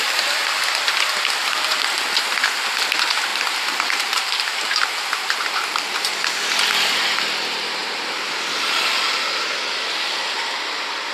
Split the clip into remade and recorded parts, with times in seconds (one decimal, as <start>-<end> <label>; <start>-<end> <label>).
0.0-3.3 recorded; 3.3-7.2 remade; 7.2-7.8 recorded; 7.8-10.2 remade; 10.2-11.1 recorded